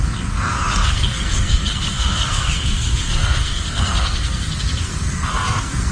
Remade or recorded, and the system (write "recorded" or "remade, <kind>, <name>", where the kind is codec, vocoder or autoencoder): remade, codec, SNAC